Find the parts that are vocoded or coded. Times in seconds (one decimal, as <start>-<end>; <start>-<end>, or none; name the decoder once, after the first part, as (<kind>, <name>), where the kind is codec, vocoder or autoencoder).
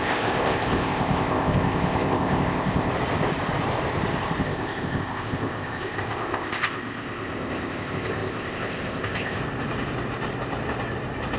0.0-2.9 (codec, ZipCodec); 4.4-9.4